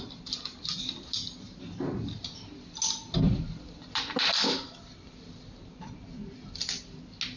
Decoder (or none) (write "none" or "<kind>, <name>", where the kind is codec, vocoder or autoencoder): none